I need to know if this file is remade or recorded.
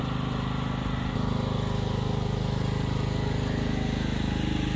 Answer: recorded